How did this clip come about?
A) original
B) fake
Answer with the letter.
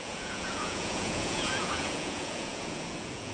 B